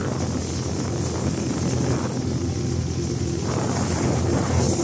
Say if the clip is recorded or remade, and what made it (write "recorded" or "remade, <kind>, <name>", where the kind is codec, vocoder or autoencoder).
recorded